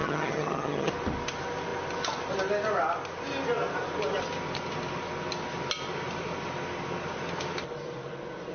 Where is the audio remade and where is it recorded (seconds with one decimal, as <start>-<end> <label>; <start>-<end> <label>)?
0.0-0.9 remade; 0.9-8.5 recorded